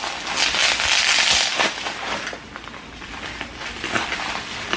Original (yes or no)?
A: yes